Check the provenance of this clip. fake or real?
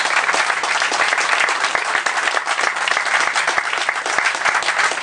fake